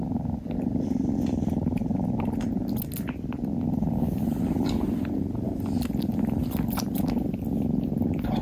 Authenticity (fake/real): real